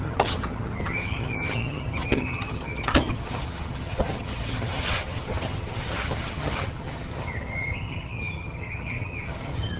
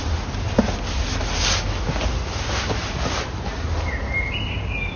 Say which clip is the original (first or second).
second